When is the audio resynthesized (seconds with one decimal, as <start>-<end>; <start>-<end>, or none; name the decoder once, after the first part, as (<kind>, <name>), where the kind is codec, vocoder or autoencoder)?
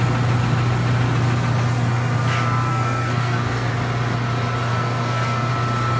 2.7-3.7 (codec, SNAC); 4.7-5.5